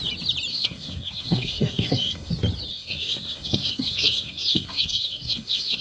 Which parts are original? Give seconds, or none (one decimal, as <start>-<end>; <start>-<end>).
0.0-0.5; 2.3-2.7